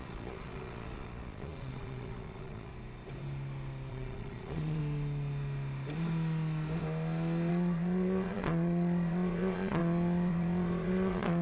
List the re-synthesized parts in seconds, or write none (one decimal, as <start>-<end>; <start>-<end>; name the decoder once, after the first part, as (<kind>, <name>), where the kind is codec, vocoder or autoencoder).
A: 0.0-2.7 (vocoder, Vocos); 3.9-4.8; 7.5-9.8; 10.3-11.4